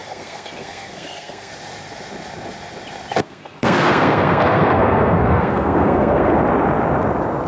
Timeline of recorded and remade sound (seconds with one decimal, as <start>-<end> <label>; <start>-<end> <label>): 0.0-1.5 remade; 1.5-3.2 recorded; 3.2-6.3 remade; 6.3-7.5 recorded

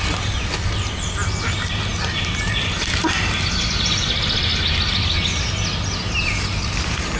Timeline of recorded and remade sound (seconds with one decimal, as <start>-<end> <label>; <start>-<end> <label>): 0.0-7.2 recorded